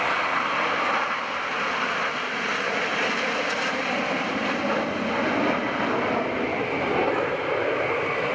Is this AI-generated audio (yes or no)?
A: no